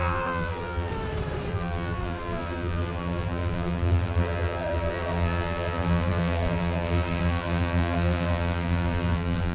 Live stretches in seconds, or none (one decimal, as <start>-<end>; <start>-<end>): 0.9-1.5